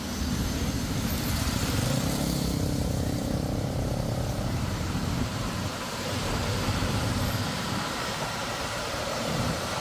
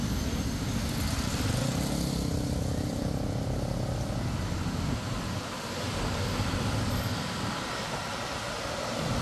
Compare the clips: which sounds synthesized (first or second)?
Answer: first